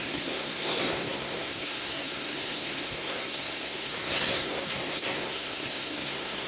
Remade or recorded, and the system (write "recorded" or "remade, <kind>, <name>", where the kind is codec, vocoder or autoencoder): remade, codec, SNAC